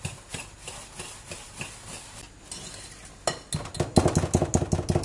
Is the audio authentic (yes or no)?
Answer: yes